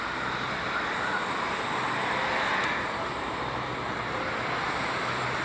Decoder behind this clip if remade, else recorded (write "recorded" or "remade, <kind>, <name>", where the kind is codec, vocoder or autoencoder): recorded